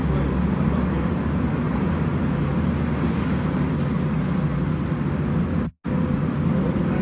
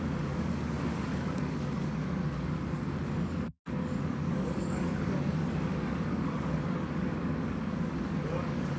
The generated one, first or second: second